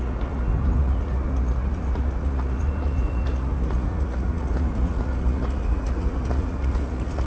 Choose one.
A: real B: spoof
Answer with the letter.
B